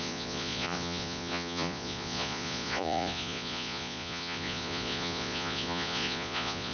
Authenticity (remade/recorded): remade